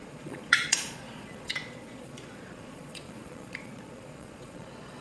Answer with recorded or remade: remade